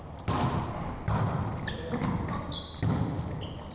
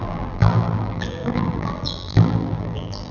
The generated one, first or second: second